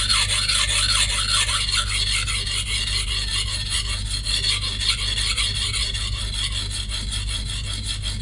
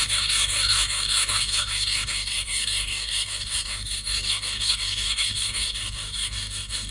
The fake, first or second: second